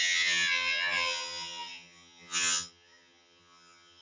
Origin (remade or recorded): remade